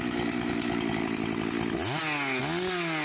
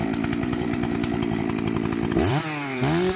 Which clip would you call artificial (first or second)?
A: second